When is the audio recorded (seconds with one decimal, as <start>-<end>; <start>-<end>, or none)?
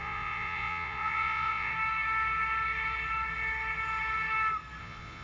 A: 1.7-4.8